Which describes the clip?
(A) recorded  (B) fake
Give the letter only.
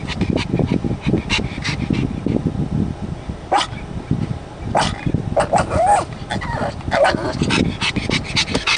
A